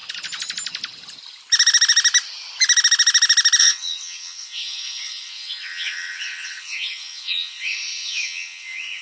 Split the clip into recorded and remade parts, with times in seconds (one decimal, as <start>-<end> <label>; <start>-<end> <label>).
0.0-3.6 recorded; 3.6-9.0 remade